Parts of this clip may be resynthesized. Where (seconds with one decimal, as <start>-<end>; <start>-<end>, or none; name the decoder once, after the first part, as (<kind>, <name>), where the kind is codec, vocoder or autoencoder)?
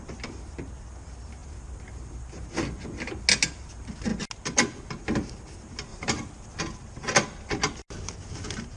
1.4-2.5 (vocoder, BigVGAN v2); 5.9-6.6